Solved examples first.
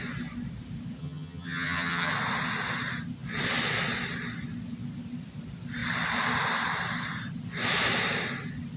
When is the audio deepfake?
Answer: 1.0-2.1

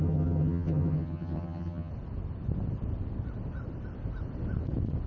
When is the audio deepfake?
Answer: 0.0-1.9

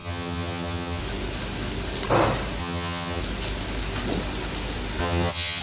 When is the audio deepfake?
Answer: 0.0-1.0; 2.6-3.2; 5.0-5.6

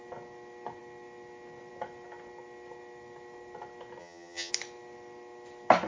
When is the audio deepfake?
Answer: 4.0-4.5

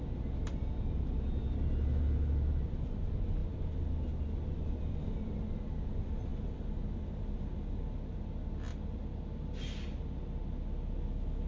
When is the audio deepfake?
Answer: none

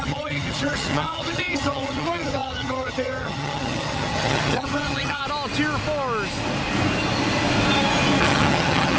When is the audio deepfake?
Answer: 0.0-5.2; 8.2-9.0